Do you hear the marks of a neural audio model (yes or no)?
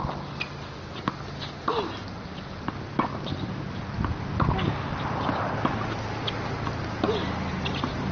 no